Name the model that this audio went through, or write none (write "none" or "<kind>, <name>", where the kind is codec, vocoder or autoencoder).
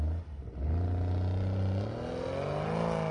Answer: none